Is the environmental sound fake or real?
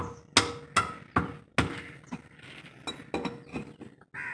real